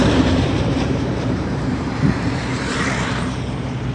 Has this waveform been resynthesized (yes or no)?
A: yes